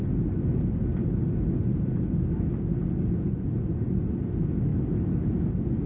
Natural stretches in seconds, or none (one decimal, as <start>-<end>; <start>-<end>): 0.0-4.7